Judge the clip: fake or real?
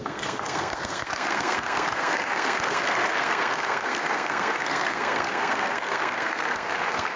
fake